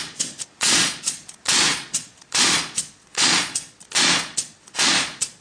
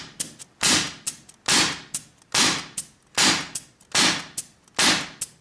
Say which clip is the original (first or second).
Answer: second